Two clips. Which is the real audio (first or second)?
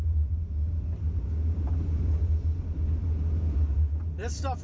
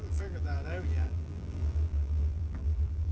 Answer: first